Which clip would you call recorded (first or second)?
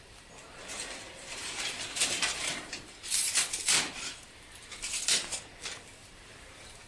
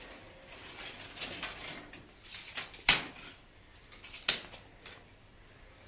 second